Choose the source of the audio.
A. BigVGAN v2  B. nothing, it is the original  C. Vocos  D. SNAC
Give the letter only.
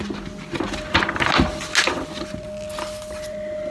B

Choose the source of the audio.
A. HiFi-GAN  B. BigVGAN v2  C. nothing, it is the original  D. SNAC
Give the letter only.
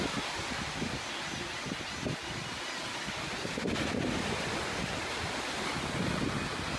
C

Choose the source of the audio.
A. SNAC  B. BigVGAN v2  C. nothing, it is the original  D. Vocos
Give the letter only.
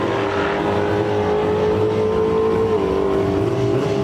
C